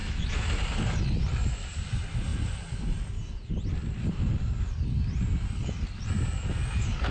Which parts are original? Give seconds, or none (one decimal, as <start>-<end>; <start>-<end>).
0.5-7.1

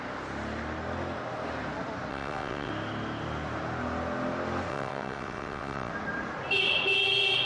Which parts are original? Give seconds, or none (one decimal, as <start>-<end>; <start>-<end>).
0.0-2.1; 2.7-4.7; 5.9-7.5

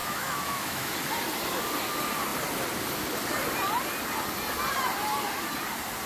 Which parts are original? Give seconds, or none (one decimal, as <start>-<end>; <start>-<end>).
0.9-6.1

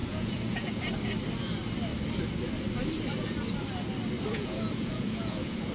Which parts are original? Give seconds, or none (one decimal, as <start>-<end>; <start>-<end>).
0.8-4.3

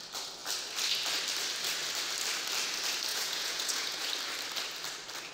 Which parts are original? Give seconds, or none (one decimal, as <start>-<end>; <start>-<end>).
0.0-3.1; 4.1-5.3

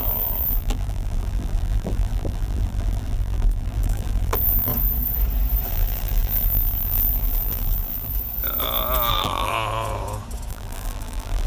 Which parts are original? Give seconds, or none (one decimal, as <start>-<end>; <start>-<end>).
4.7-5.7; 8.1-9.1; 9.5-10.5

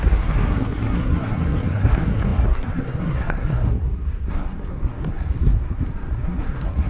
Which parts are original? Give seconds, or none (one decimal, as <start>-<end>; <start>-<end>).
none